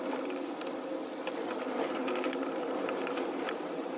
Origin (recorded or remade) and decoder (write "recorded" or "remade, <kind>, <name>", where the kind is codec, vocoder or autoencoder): recorded